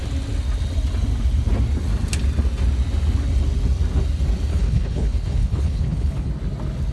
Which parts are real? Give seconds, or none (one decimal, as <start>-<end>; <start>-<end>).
0.0-4.5; 6.3-6.9